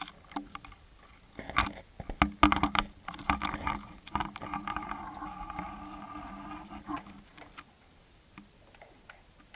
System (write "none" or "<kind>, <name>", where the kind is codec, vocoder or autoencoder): none